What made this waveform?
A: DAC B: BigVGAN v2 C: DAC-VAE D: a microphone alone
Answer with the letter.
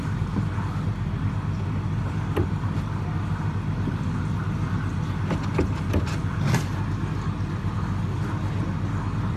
D